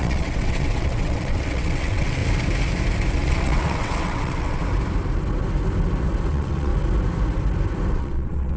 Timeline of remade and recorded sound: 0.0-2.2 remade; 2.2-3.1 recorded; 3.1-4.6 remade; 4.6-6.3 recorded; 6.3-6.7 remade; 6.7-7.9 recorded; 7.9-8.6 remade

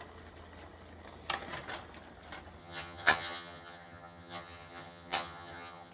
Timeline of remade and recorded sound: 0.0-2.6 recorded; 2.6-5.9 remade